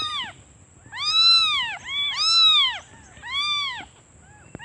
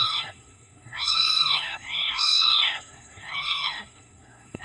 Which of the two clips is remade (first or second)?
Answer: second